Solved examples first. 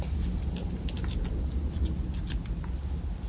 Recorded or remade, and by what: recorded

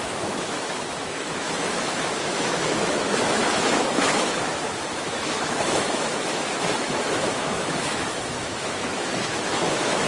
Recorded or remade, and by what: remade, autoencoder, DAC-VAE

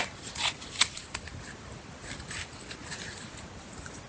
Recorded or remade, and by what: recorded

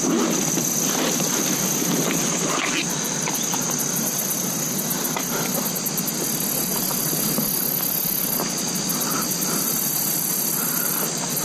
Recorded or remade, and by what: recorded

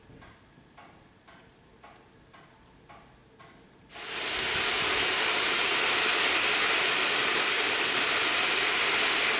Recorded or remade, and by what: recorded